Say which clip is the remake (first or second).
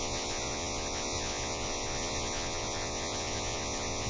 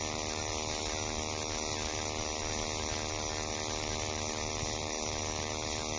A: first